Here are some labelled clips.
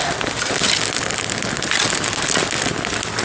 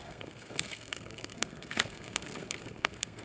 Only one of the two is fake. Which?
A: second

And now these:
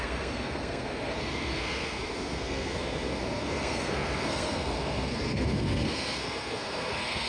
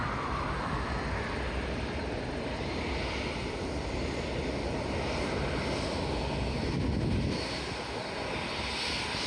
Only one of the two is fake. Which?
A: first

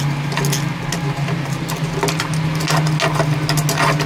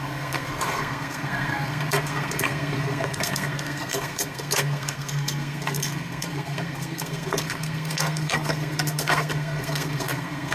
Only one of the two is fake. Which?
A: second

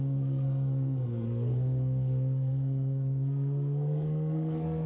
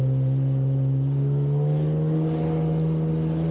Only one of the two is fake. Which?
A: first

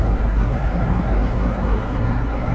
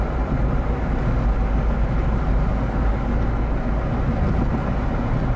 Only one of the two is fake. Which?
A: first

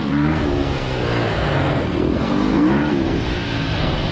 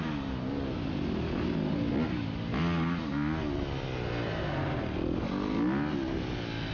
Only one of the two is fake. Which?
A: first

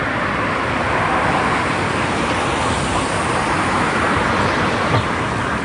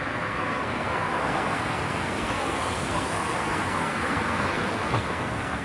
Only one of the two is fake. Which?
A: second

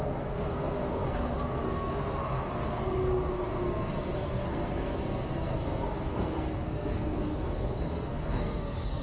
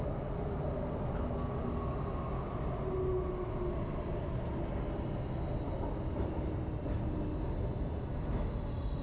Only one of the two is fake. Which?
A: first